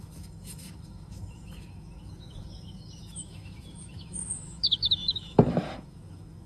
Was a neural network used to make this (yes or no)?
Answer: yes